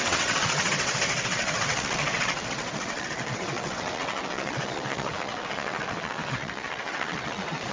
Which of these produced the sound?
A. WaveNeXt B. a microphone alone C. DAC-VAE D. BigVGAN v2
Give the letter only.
A